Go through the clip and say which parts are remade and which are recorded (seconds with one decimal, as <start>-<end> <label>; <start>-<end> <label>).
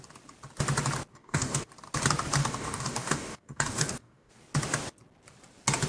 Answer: 0.0-1.1 recorded; 1.1-1.7 remade; 1.7-2.4 recorded; 2.4-4.3 remade; 4.3-5.9 recorded